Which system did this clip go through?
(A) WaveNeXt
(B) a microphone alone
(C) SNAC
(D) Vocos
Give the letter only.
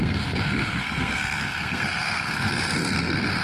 C